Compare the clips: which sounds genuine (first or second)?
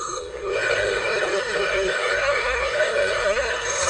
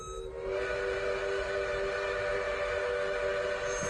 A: second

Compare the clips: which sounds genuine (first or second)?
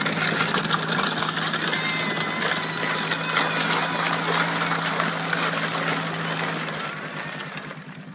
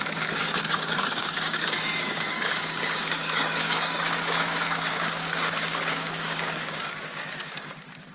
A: first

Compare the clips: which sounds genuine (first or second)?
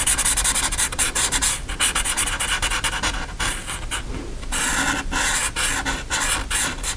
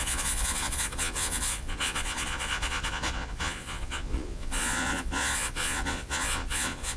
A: first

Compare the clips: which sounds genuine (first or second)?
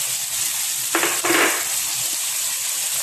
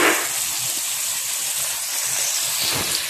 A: second